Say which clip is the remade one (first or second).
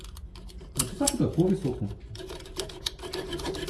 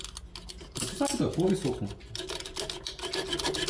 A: first